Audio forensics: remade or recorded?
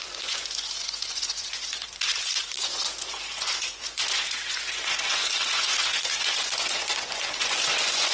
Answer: remade